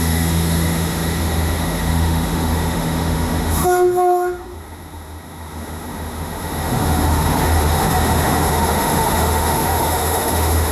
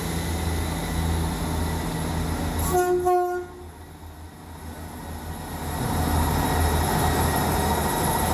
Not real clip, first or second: first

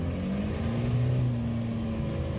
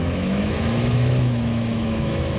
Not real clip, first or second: second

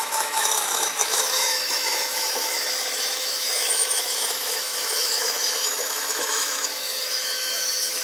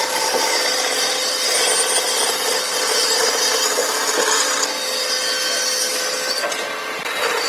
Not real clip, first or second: first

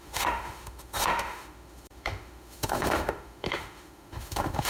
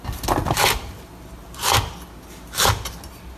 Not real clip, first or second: first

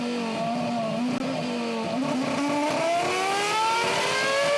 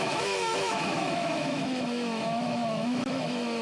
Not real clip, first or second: second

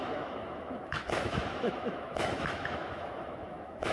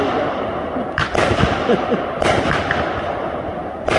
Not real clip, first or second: first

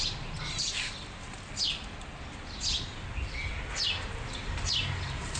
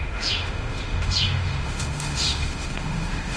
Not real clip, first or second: second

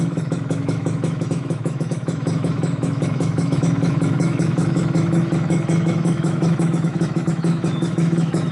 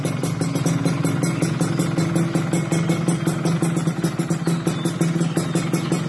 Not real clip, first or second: first